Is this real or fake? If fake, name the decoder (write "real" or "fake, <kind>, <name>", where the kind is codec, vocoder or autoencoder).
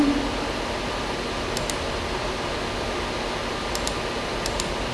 real